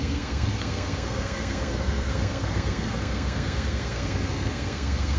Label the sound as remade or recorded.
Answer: remade